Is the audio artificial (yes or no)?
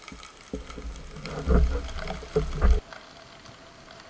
no